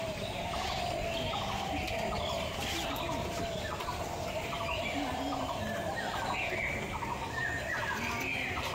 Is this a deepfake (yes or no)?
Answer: no